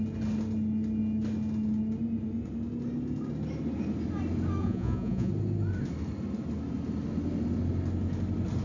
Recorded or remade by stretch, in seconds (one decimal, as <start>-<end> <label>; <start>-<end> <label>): 0.0-4.6 recorded; 4.6-5.3 remade; 5.3-8.6 recorded